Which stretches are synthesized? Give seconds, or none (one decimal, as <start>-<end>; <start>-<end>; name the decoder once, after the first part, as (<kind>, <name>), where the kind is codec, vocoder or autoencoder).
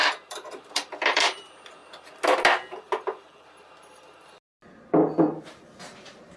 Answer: 0.0-1.8 (vocoder, BigVGAN v2); 5.4-6.4